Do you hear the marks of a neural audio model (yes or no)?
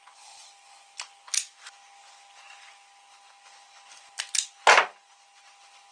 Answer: no